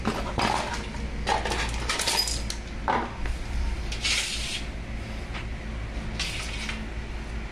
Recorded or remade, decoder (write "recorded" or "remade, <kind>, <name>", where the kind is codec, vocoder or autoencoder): recorded